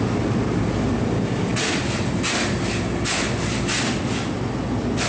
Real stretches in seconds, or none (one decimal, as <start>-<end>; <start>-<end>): 0.0-5.1